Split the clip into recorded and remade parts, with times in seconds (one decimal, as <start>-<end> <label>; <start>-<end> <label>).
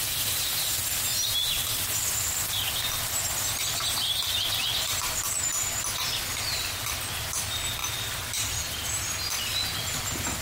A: 0.0-7.8 recorded; 7.8-8.6 remade; 8.6-10.4 recorded